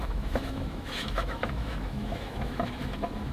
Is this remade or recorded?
remade